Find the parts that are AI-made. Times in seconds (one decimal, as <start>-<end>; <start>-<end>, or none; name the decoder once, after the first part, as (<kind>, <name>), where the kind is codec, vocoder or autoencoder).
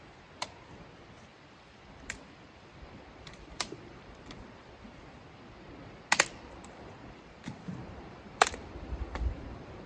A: 1.3-4.7 (vocoder, BigVGAN v2); 6.6-9.9